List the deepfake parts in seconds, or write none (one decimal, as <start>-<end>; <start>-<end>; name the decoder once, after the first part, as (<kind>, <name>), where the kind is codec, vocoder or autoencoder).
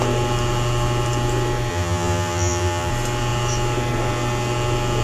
1.7-2.9 (vocoder, BigVGAN v2)